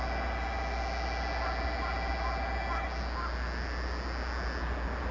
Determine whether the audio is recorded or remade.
recorded